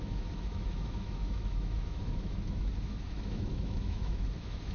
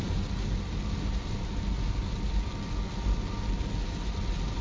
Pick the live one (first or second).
second